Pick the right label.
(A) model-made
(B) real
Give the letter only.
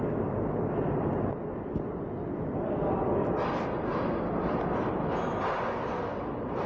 B